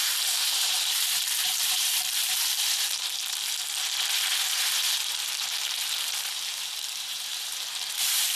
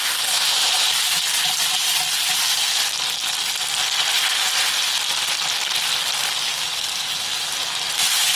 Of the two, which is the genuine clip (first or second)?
second